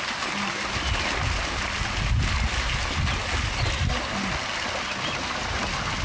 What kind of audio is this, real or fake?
real